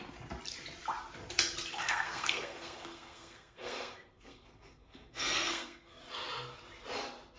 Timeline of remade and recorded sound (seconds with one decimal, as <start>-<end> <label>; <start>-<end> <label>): 0.0-1.7 recorded; 1.7-6.0 remade; 6.0-7.4 recorded